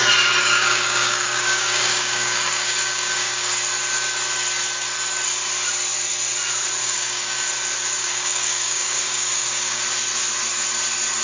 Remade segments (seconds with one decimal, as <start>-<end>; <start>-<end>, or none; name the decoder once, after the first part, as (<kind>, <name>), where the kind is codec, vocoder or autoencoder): 0.4-3.5 (codec, DAC); 6.8-7.5; 8.0-9.8